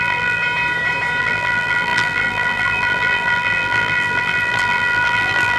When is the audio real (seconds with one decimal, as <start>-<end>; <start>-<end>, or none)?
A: 0.4-1.2